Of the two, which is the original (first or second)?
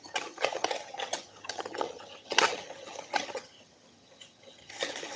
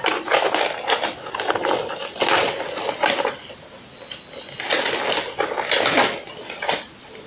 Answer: second